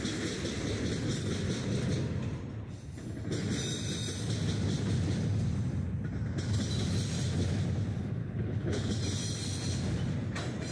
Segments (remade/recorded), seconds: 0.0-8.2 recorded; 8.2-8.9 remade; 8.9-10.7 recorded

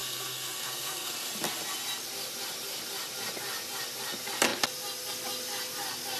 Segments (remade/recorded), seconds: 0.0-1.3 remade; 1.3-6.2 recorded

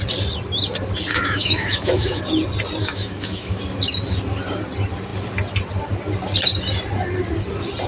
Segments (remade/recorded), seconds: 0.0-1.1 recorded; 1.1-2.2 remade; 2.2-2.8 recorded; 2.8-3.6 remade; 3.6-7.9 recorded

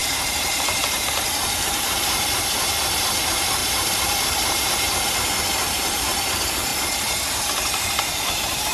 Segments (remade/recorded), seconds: 0.0-8.7 remade

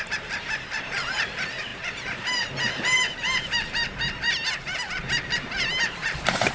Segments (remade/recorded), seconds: 0.0-6.5 remade

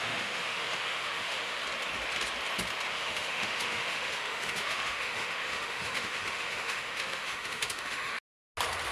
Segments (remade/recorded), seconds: 0.0-1.6 remade; 1.6-2.9 recorded; 2.9-8.1 remade; 8.1-8.9 recorded

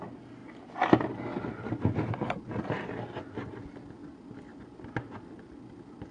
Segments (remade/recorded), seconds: 0.0-6.1 recorded